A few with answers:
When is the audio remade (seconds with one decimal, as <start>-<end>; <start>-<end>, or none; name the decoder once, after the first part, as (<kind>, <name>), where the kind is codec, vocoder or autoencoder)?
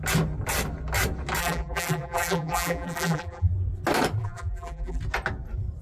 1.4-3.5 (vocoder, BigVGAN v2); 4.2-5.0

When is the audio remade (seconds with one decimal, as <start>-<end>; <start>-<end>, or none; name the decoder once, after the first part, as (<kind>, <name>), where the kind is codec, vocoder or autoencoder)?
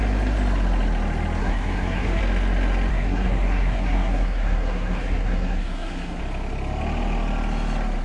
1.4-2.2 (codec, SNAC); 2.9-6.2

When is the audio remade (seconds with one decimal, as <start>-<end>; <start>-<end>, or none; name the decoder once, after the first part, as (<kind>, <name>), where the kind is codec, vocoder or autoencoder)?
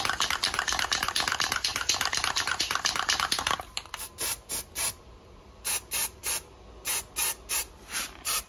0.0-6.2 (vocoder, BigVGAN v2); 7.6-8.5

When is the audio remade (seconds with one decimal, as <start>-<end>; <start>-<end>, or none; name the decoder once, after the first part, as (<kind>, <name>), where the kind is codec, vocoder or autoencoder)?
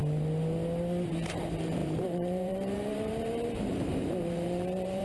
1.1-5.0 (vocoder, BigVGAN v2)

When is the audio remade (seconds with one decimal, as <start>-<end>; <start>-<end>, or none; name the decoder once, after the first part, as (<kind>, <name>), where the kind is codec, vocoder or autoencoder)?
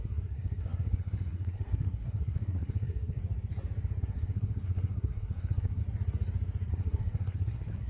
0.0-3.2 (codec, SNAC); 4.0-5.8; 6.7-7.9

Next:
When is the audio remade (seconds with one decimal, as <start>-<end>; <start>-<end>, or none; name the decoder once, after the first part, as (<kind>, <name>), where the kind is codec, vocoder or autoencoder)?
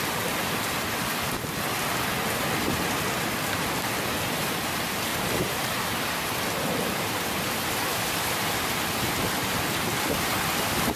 5.1-6.3 (vocoder, BigVGAN v2)